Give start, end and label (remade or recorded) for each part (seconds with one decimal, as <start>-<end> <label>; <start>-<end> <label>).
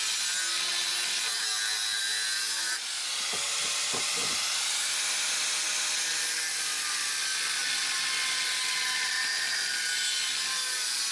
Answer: 0.0-11.1 recorded